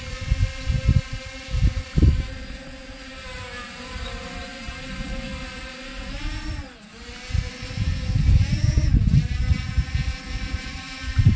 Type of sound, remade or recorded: remade